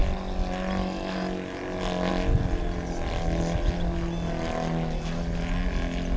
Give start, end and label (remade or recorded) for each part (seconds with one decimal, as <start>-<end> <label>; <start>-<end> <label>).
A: 0.0-6.2 recorded